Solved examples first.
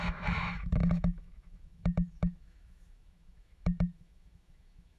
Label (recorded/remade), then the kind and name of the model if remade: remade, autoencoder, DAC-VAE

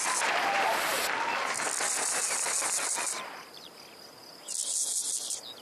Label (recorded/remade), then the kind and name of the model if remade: recorded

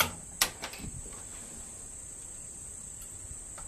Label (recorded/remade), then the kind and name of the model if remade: recorded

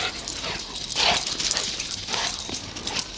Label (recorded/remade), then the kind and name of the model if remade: recorded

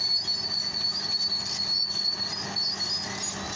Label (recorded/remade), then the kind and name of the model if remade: recorded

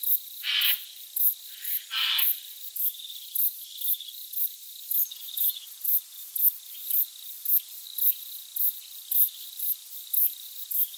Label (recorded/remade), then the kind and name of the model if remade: recorded